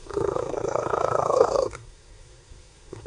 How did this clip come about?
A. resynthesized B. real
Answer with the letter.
A